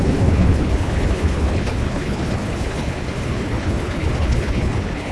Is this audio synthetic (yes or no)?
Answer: yes